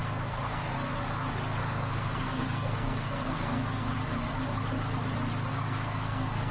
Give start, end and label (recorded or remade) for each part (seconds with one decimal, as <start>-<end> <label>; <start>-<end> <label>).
0.0-0.9 remade; 0.9-1.6 recorded; 1.6-3.9 remade; 3.9-5.5 recorded; 5.5-6.5 remade